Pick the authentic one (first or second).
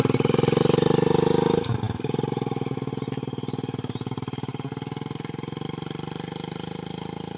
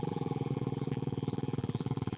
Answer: first